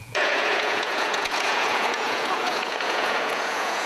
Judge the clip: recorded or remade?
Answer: remade